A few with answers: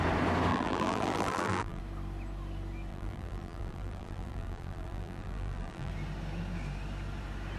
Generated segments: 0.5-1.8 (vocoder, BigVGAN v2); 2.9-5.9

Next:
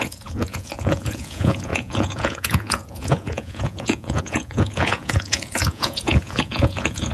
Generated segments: 0.0-7.1 (vocoder, Vocos)

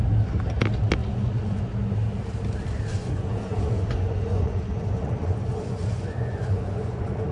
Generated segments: 1.0-1.7 (vocoder, Vocos); 2.9-7.3

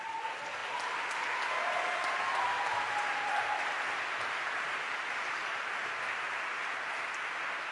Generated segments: none